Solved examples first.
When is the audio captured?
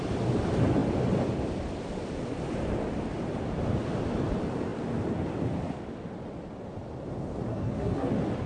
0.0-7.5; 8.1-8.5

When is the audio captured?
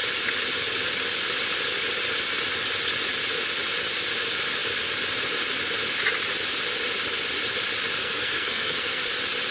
0.0-8.0; 9.1-9.5